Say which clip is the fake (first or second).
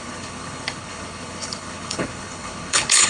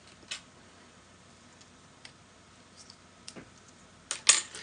first